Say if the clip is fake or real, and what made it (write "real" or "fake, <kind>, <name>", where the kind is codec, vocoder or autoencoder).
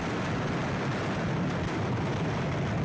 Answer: real